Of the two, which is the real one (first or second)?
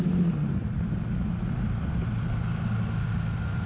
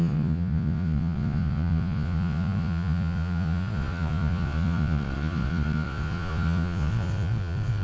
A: first